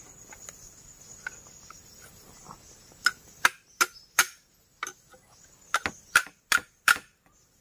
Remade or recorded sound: recorded